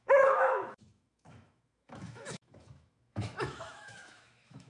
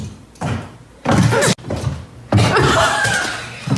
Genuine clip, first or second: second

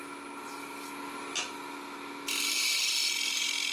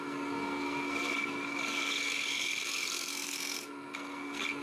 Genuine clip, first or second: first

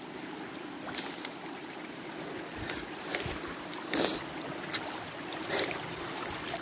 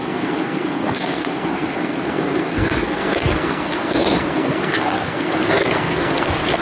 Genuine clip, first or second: first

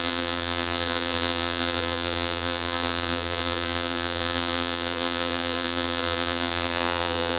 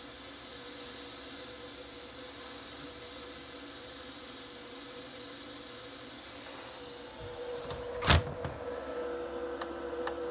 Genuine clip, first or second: second